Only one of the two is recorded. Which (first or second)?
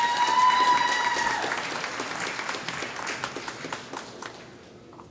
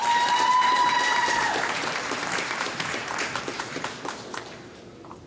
first